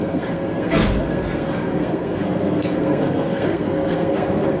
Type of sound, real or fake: fake